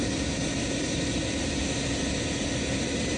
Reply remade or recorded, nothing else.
recorded